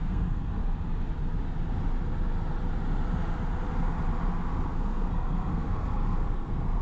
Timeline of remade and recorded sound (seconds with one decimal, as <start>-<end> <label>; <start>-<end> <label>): 0.0-0.6 remade; 0.6-4.7 recorded; 4.7-6.8 remade